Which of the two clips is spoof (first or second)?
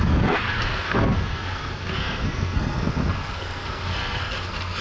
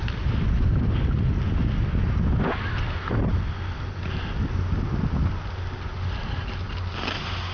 first